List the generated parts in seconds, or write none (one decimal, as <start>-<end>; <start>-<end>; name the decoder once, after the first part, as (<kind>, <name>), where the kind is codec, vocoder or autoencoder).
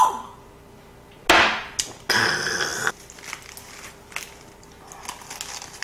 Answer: none